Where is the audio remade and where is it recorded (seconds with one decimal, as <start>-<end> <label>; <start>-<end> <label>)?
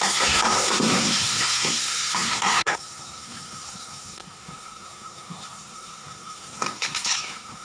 0.0-7.6 remade